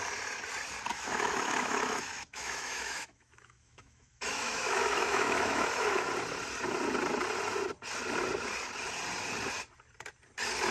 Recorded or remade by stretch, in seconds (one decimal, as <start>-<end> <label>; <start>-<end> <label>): 0.0-0.9 recorded; 0.9-6.1 remade; 6.1-10.7 recorded

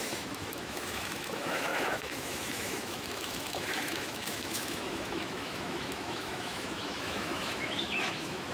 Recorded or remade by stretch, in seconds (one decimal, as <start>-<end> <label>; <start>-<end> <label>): 0.0-8.5 remade

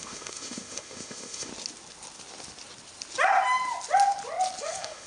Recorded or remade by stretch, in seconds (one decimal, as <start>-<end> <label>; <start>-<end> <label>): 0.0-1.5 remade; 1.5-4.6 recorded; 4.6-5.1 remade

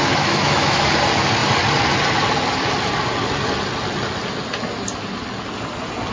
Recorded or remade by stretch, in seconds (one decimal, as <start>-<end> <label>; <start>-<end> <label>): 0.0-0.9 remade; 0.9-6.1 recorded

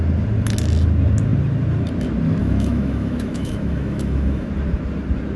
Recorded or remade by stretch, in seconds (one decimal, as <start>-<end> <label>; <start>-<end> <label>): 0.0-2.4 recorded; 2.4-4.5 remade; 4.5-5.4 recorded

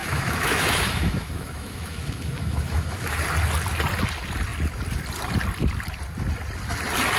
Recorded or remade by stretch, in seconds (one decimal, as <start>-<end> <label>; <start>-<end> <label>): 0.0-3.2 remade; 3.2-7.2 recorded